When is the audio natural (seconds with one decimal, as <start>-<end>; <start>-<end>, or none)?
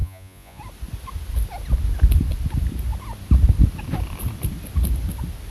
0.6-5.5